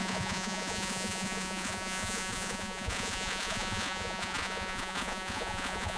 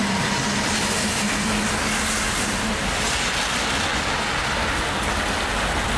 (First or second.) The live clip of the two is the second